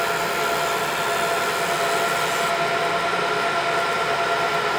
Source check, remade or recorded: recorded